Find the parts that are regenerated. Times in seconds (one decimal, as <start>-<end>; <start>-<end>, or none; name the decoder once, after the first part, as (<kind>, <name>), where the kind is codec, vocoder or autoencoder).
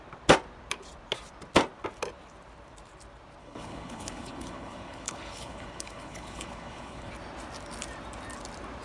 3.4-7.1 (codec, HILCodec)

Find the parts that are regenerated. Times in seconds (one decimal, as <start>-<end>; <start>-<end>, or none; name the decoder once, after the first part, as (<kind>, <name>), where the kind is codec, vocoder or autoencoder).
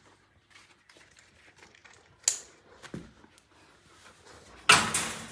none